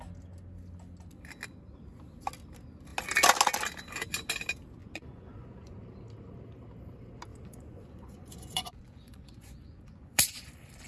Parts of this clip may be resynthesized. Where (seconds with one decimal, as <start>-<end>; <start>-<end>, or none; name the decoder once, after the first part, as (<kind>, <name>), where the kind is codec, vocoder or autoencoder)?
4.8-5.8 (vocoder, Vocos); 7.3-10.5